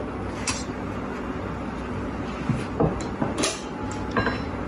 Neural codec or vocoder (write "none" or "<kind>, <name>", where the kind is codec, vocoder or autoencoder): none